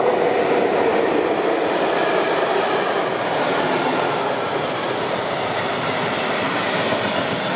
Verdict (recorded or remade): recorded